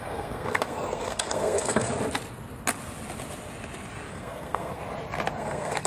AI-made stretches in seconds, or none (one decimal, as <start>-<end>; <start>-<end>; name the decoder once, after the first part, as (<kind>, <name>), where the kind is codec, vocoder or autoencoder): 0.0-1.9 (codec, SNAC); 4.1-4.8; 5.3-5.9